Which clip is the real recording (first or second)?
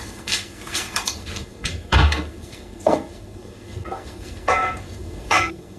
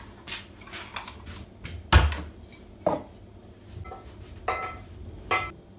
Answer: second